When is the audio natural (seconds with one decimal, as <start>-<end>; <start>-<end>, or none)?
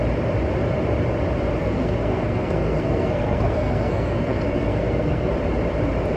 0.0-1.6; 5.3-6.2